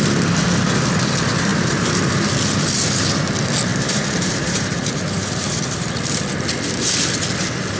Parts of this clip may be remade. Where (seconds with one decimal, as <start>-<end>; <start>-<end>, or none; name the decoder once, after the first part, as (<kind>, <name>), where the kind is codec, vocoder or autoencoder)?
1.5-2.1 (vocoder, BigVGAN v2); 3.7-5.9